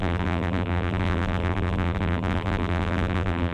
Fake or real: fake